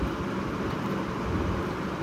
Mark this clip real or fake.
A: real